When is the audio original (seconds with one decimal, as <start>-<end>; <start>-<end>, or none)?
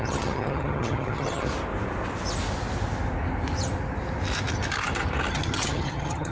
1.5-5.3